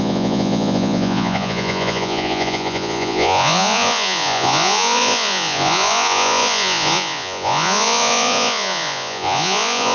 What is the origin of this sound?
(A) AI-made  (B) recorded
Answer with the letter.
A